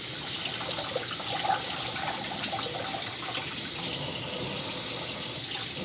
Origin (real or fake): real